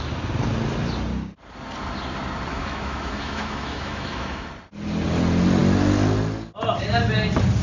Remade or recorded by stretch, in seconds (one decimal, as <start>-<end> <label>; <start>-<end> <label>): 0.0-2.5 recorded; 2.5-4.5 remade; 4.5-7.6 recorded